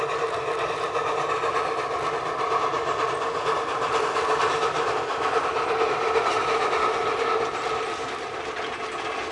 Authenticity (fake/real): real